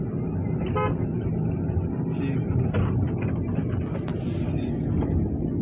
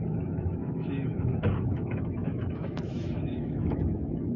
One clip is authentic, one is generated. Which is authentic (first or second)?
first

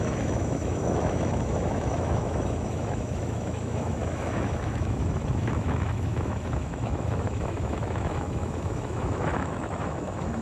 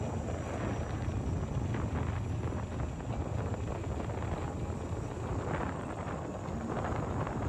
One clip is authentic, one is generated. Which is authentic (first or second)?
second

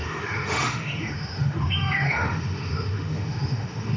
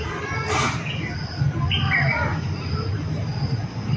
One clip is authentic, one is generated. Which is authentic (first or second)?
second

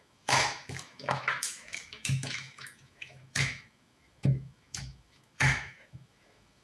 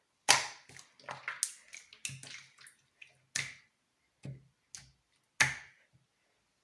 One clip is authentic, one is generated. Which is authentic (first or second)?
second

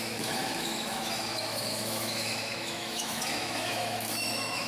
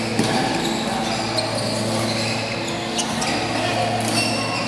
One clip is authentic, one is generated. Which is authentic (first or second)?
second